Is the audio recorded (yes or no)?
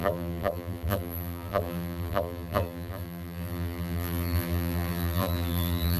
no